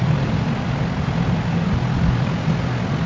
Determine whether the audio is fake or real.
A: real